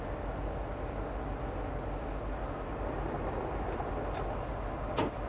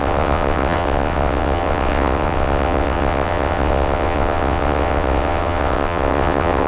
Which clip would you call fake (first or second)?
second